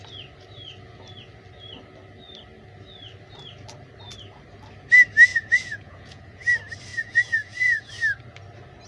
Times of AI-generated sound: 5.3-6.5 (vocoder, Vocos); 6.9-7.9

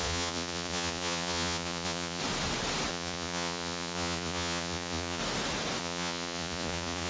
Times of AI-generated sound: 0.0-2.2 (vocoder, Vocos); 2.9-5.2; 5.8-7.1